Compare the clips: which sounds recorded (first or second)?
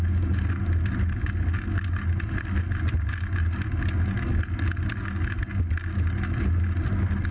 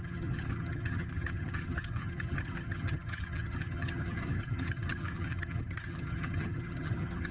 first